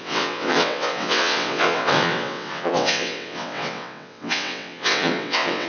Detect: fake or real fake